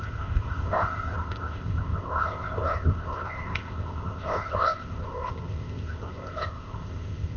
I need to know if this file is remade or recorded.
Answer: remade